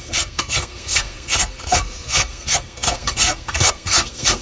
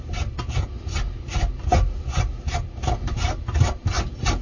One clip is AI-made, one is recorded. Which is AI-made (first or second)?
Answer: first